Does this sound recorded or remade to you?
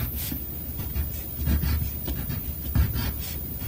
recorded